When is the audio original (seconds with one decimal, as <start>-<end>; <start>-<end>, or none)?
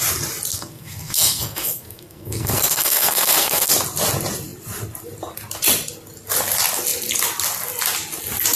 0.0-0.5; 3.7-8.6